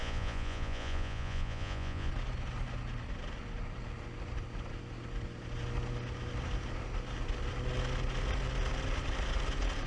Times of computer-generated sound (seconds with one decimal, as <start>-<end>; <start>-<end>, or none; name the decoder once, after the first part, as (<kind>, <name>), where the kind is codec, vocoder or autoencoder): 0.0-2.1 (vocoder, Vocos)